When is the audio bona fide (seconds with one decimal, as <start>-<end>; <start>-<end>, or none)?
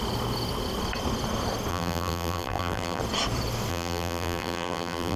0.0-1.7; 3.0-3.7